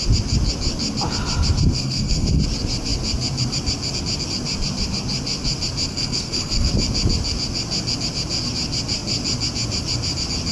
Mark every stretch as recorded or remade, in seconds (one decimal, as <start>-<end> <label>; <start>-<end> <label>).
0.0-1.7 recorded; 1.7-2.4 remade; 2.4-5.9 recorded; 5.9-6.7 remade; 6.7-10.5 recorded